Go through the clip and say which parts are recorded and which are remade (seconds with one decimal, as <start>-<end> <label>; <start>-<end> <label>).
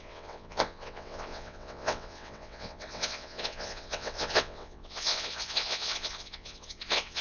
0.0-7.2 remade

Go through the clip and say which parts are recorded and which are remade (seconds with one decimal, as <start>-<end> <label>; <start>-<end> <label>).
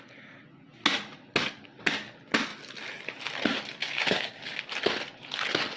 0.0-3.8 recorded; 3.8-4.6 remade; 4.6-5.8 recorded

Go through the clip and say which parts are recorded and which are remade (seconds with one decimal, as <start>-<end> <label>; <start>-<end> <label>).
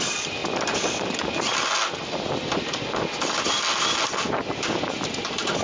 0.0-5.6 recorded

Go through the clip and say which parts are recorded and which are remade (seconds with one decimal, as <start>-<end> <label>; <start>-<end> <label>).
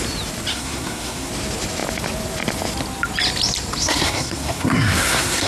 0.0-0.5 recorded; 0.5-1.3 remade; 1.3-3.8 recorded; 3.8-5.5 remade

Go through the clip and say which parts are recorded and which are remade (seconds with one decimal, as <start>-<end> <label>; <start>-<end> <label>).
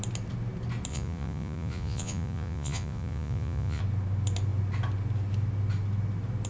0.0-0.9 recorded; 0.9-3.8 remade; 3.8-6.5 recorded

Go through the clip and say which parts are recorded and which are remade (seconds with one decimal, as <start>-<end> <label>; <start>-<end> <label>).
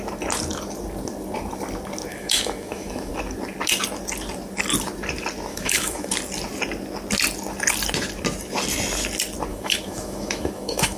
0.0-2.1 recorded; 2.1-3.1 remade; 3.1-5.5 recorded; 5.5-6.1 remade; 6.1-9.5 recorded; 9.5-11.0 remade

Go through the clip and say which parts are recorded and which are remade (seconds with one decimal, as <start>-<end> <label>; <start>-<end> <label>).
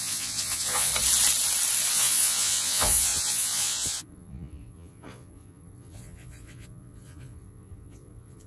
0.0-0.9 remade; 0.9-1.9 recorded; 1.9-8.5 remade